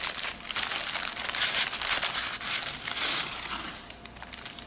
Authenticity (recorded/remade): recorded